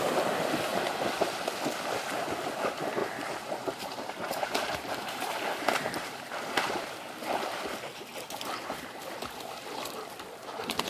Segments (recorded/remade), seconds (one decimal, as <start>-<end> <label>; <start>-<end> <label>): 0.0-3.0 recorded; 3.0-6.1 remade; 6.1-10.9 recorded